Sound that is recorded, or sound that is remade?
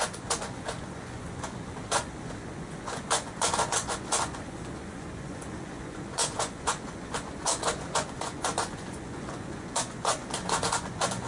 remade